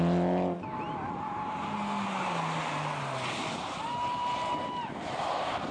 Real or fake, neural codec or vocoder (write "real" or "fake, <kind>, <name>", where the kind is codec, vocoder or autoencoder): real